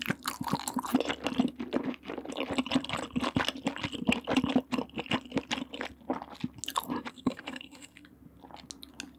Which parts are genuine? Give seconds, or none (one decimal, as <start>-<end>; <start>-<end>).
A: 0.0-7.1; 8.1-9.2